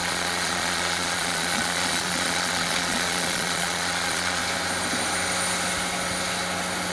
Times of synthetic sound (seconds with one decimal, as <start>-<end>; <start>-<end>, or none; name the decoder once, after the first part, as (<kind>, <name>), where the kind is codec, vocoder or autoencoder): 0.0-4.4 (vocoder, Vocos)